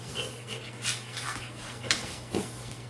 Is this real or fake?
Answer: fake